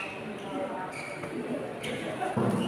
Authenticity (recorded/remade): recorded